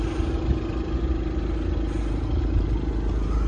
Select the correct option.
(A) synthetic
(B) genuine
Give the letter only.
B